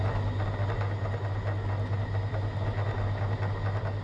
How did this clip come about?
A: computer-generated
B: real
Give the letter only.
B